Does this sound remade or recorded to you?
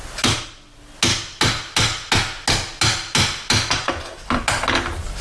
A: recorded